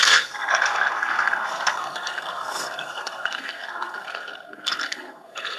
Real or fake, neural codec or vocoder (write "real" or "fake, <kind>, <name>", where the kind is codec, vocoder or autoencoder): fake, codec, SNAC